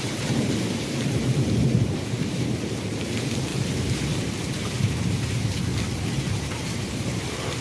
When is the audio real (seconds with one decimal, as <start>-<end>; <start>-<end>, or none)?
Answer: 5.7-6.3